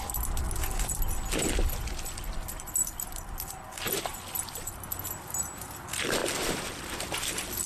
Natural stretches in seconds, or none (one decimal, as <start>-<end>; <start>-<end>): 0.0-2.8; 4.6-6.2

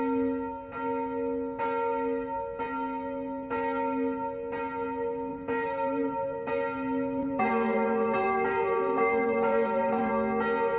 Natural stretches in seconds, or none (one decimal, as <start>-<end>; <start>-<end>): 0.0-5.3; 6.5-7.2; 10.1-10.8

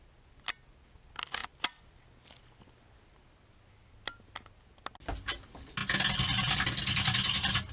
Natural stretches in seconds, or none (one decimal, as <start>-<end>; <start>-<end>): 0.0-7.7

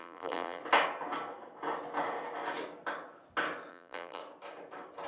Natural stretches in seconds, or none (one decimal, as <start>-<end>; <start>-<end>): 0.6-3.7; 4.2-5.1